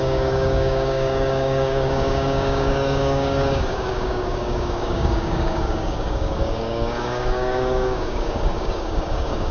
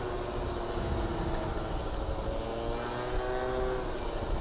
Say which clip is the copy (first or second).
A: first